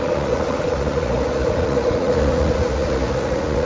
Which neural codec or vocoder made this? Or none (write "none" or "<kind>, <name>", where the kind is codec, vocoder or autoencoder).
vocoder, Vocos